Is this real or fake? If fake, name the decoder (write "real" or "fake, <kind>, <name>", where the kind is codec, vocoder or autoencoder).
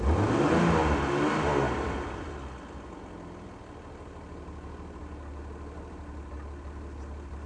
real